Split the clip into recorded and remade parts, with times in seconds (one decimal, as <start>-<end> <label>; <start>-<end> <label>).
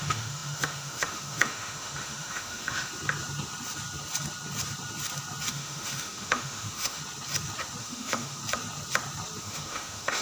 0.0-2.9 remade; 2.9-5.5 recorded; 5.5-7.0 remade; 7.0-7.8 recorded; 7.8-8.4 remade; 8.4-9.4 recorded; 9.4-10.2 remade